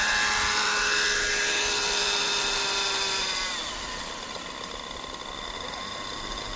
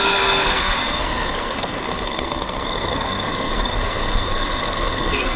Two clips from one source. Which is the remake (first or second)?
second